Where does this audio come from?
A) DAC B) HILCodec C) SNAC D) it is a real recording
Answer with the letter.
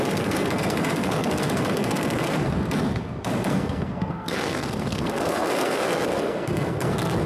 C